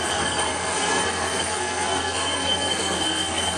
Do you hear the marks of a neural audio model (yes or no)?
yes